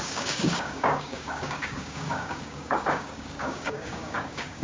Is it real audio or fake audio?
fake